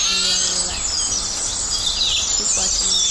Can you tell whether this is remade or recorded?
recorded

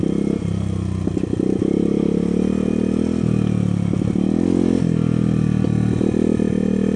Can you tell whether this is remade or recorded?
recorded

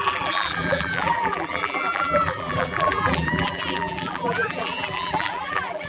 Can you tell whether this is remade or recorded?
remade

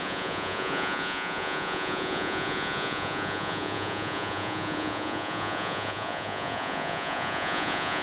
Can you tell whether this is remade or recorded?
remade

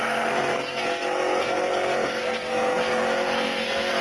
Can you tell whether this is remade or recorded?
remade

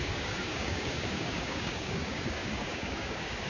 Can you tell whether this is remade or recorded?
remade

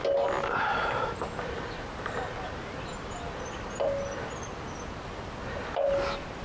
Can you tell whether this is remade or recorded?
recorded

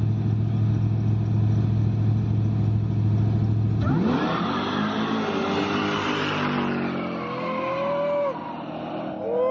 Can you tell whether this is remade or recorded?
recorded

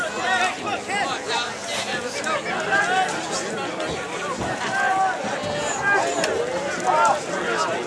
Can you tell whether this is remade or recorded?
recorded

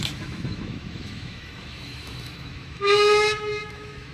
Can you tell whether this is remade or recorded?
remade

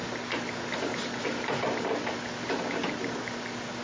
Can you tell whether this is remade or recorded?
recorded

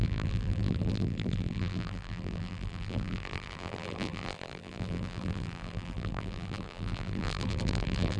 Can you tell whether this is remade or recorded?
remade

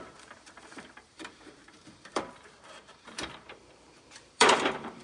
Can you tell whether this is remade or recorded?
remade